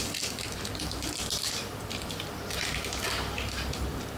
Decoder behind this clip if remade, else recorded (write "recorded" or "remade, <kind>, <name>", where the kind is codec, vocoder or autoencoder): recorded